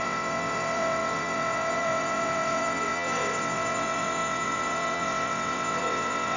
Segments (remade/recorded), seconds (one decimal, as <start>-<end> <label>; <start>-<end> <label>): 0.0-6.4 remade